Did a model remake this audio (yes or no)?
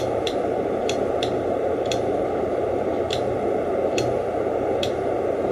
yes